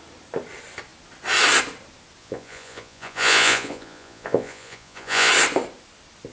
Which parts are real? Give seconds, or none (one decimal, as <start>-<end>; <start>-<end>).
0.0-2.2; 5.3-6.3